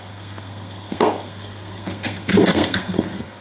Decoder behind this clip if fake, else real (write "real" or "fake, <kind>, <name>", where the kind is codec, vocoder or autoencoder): fake, codec, SNAC